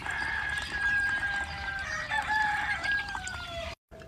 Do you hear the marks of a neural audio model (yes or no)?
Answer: yes